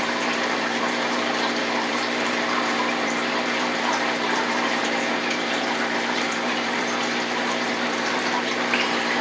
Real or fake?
fake